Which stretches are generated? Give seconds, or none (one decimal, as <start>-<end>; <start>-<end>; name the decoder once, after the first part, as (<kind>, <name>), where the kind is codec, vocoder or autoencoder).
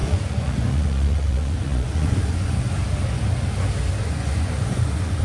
0.0-2.7 (vocoder, Vocos); 4.0-5.2